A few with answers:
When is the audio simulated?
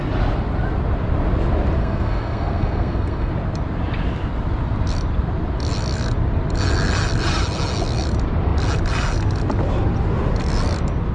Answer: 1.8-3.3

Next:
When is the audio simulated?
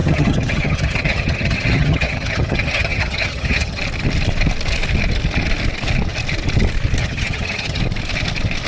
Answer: 0.0-3.8; 7.0-7.8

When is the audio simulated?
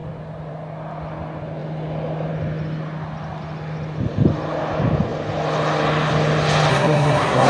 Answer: 6.7-7.5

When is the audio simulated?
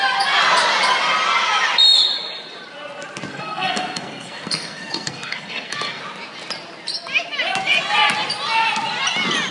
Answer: 3.3-6.0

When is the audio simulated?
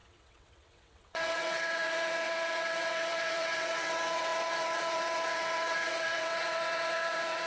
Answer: 0.0-7.5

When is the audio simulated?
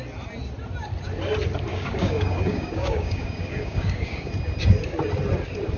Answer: 1.7-4.3